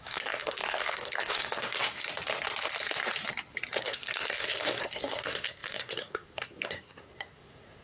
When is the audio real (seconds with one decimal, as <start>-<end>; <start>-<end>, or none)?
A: 2.1-3.8